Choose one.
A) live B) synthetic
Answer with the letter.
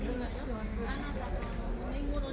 A